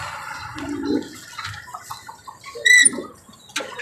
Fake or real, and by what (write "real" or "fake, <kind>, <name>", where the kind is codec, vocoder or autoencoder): real